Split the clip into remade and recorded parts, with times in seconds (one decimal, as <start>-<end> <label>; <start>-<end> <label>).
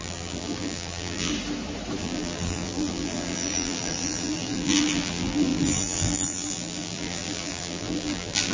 0.0-1.3 remade; 1.3-2.0 recorded; 2.0-8.5 remade